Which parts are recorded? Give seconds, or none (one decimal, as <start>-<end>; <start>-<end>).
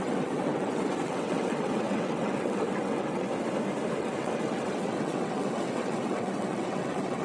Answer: 3.3-4.0